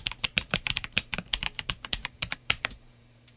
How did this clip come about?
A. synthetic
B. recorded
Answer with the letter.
A